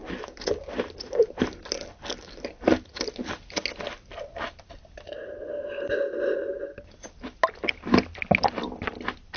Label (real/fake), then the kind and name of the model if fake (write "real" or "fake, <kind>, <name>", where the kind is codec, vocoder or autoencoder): real